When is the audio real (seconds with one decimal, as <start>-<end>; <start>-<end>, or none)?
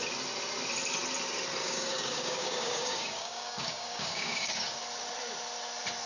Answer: 0.0-1.6; 4.8-6.1